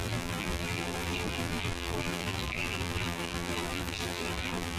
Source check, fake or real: fake